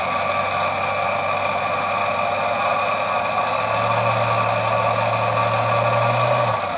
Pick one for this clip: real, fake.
real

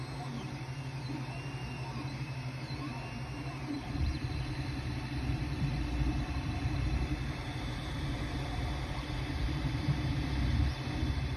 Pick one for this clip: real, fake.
fake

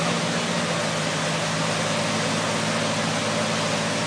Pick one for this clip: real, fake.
real